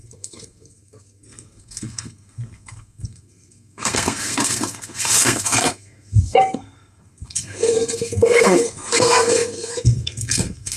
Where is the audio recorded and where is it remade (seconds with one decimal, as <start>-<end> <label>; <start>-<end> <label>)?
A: 0.0-10.8 remade